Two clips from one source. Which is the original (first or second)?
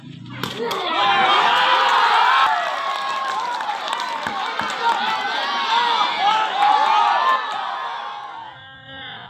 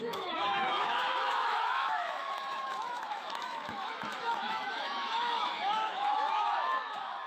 first